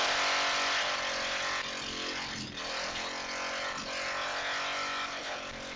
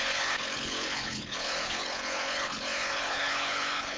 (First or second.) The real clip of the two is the first